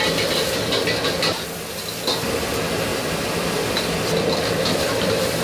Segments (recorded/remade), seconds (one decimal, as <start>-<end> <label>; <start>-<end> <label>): 0.0-2.9 recorded; 2.9-5.4 remade